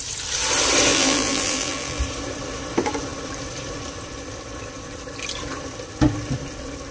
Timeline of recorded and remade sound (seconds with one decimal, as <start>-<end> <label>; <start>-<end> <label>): 0.0-0.9 recorded; 0.9-2.0 remade; 2.0-6.9 recorded